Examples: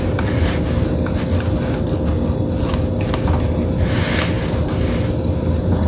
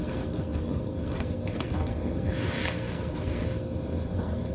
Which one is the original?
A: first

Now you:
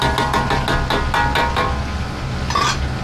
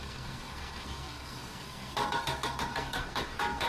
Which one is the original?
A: first